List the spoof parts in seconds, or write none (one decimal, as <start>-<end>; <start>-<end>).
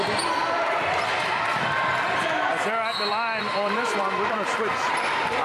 3.1-4.5